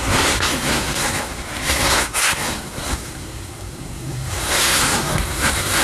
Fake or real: fake